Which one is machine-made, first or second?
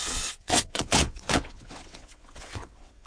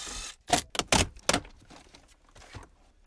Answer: first